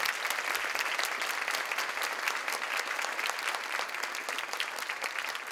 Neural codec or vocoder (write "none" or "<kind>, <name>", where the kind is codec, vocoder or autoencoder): none